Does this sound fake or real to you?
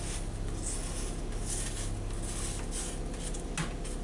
real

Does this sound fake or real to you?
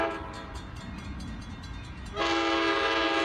real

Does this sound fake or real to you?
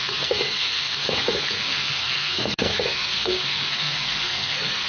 fake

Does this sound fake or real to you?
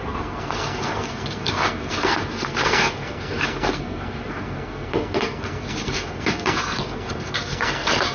fake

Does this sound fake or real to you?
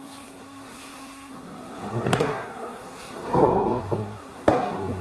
fake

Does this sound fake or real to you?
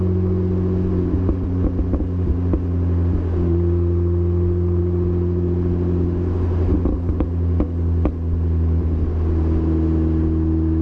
real